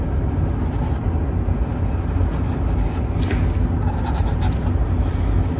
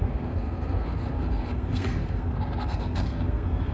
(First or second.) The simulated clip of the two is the second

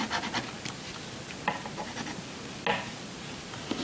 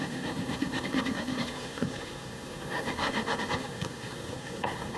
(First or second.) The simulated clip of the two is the second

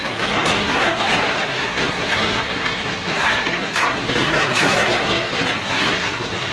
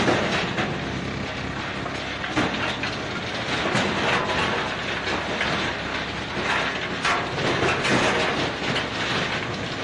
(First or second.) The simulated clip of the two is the first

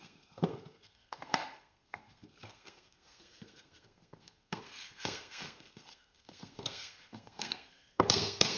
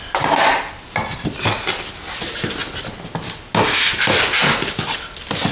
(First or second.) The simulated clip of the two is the first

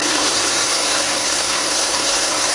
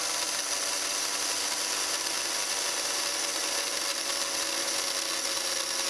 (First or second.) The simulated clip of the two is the first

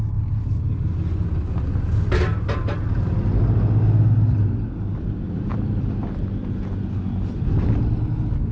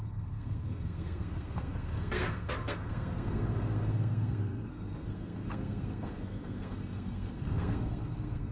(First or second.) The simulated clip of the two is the second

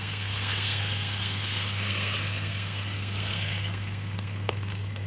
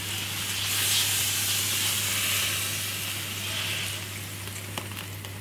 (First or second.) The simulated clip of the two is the first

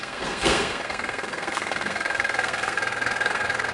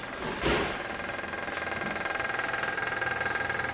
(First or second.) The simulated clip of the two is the first